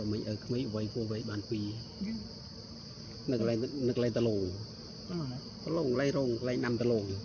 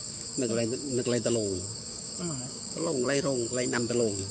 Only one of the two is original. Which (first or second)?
first